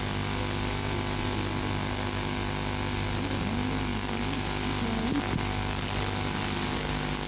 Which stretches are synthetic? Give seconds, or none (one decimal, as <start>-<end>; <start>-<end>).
none